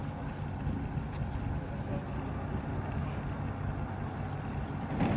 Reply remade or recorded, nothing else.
recorded